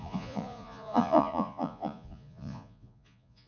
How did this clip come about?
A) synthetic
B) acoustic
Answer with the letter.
A